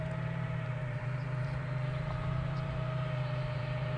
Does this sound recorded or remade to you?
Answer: remade